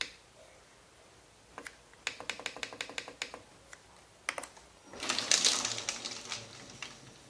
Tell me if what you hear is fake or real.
real